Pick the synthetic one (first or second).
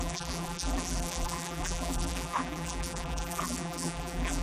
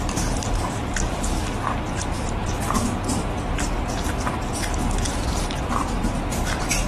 first